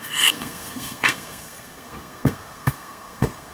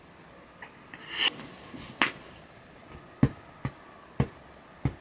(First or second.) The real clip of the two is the second